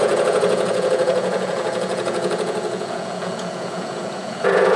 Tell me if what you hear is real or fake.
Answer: fake